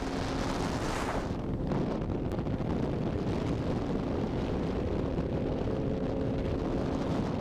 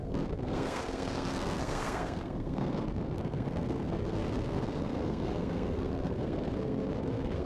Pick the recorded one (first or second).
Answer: first